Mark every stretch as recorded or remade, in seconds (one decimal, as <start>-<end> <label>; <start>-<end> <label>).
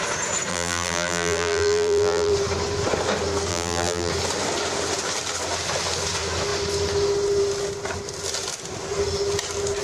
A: 0.0-0.5 recorded; 0.5-2.3 remade; 2.3-3.5 recorded; 3.5-4.1 remade; 4.1-9.8 recorded